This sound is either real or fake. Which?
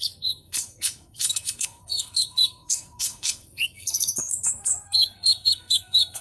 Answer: fake